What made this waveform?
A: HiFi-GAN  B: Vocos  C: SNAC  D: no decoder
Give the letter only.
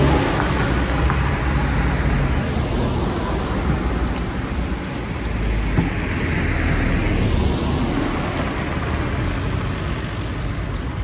D